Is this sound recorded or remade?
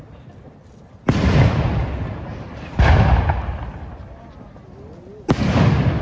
recorded